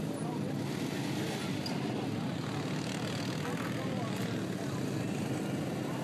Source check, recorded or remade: recorded